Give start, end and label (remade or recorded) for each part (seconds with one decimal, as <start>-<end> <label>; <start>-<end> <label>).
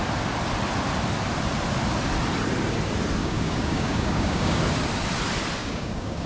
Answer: 0.0-3.2 recorded; 3.2-4.6 remade; 4.6-5.6 recorded; 5.6-6.3 remade